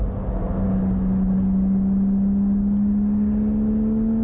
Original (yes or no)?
yes